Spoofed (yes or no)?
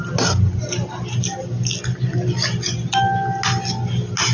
no